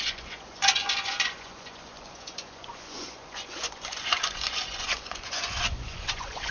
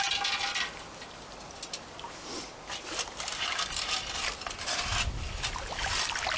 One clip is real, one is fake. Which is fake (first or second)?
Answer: first